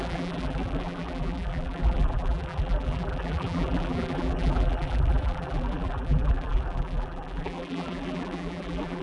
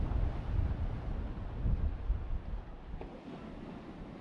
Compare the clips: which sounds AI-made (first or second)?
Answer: first